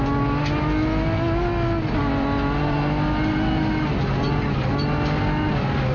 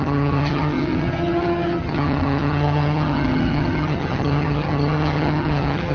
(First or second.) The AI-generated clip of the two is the second